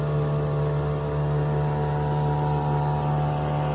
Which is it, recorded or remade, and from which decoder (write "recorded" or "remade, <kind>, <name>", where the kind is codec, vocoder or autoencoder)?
recorded